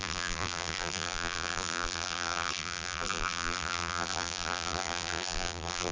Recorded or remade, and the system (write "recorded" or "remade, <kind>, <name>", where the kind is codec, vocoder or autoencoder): remade, vocoder, BigVGAN v2